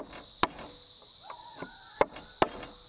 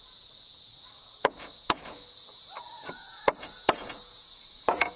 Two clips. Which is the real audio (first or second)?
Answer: first